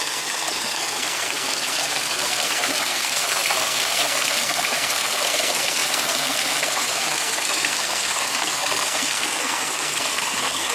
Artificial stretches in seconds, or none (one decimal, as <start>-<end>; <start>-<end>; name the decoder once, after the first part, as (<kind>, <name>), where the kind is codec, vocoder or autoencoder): 0.0-10.7 (codec, SNAC)